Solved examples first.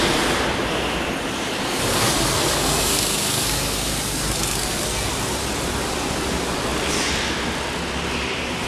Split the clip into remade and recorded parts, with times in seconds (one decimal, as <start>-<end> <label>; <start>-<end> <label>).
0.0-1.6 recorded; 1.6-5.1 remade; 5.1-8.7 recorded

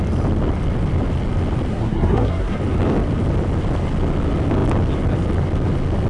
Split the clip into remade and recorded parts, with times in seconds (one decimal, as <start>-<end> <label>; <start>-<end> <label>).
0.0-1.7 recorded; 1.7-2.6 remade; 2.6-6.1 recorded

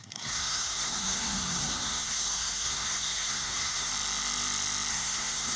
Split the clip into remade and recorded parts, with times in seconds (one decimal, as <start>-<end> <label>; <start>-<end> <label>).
0.0-3.9 remade; 3.9-4.9 recorded; 4.9-5.6 remade

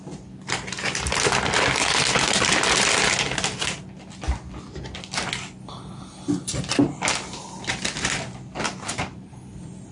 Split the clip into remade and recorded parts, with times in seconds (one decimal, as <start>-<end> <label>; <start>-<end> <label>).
0.0-9.9 recorded

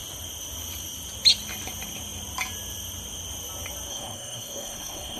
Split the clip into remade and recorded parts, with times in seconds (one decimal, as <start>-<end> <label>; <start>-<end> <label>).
0.0-3.9 recorded; 3.9-5.2 remade